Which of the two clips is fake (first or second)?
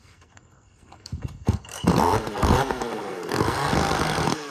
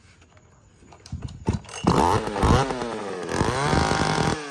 first